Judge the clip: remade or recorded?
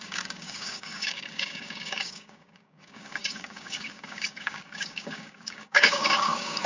remade